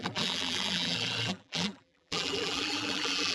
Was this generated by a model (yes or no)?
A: yes